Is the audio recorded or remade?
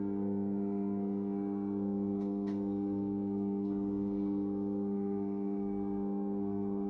remade